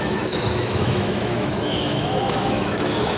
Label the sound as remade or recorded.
remade